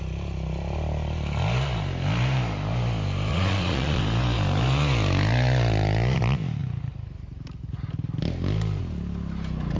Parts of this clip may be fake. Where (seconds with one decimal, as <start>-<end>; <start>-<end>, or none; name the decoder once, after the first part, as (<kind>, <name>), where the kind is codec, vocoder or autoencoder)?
3.3-4.0 (vocoder, Vocos)